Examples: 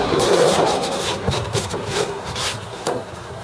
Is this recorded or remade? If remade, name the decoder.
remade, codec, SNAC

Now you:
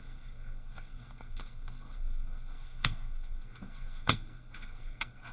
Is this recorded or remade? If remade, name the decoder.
remade, codec, SNAC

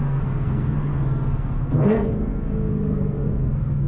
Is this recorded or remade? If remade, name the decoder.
remade, codec, SNAC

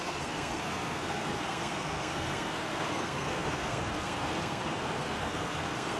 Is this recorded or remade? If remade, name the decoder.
remade, codec, SNAC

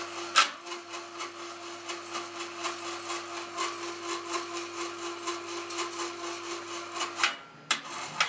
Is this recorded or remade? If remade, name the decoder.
recorded